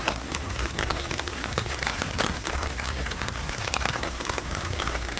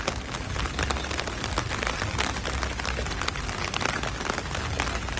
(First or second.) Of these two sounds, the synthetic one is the first